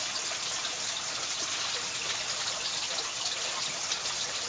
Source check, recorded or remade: recorded